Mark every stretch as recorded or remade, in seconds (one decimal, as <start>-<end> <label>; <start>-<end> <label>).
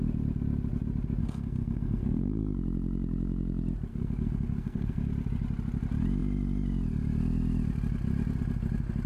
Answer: 0.0-1.2 recorded; 1.2-2.4 remade; 2.4-3.9 recorded; 3.9-5.1 remade; 5.1-9.1 recorded